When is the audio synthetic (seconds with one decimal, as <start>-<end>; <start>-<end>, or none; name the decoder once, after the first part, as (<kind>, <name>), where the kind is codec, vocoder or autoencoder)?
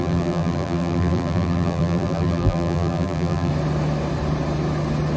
0.0-3.5 (vocoder, BigVGAN v2)